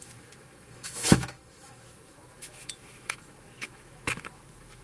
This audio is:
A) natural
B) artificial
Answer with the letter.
B